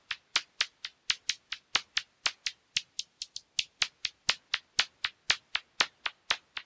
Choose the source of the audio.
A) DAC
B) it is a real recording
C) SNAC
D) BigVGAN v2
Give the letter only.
B